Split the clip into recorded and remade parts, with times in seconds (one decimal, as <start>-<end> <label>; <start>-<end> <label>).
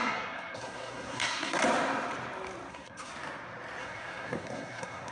0.0-1.6 remade; 1.6-2.7 recorded; 2.7-3.1 remade; 3.1-3.8 recorded; 3.8-5.1 remade